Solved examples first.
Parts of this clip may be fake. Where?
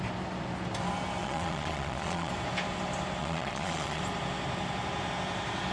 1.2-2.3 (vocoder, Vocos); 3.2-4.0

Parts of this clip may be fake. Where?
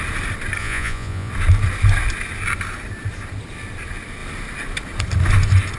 0.6-1.3 (vocoder, Vocos)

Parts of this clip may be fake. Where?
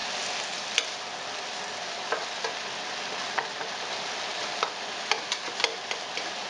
none